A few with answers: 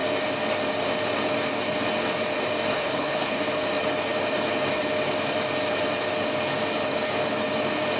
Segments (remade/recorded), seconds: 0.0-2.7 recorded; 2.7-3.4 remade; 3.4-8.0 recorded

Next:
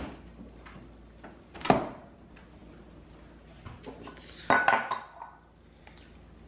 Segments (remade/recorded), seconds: 0.0-6.5 recorded

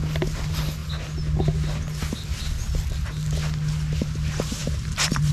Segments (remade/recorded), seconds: 0.0-4.6 recorded; 4.6-5.3 remade

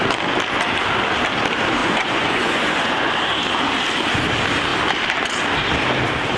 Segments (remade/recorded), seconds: 0.0-1.8 recorded; 1.8-3.1 remade; 3.1-6.4 recorded

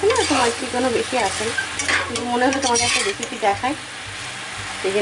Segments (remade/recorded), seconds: 0.0-5.0 recorded

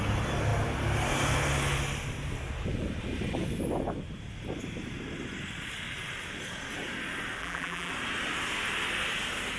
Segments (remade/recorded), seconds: 0.0-7.4 recorded; 7.4-7.9 remade; 7.9-9.6 recorded

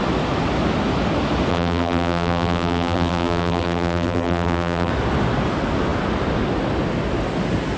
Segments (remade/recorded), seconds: 0.0-1.5 recorded; 1.5-4.9 remade; 4.9-7.8 recorded